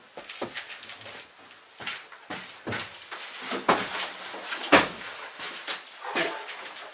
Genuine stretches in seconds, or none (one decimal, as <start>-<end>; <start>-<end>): 0.0-4.6; 5.6-6.9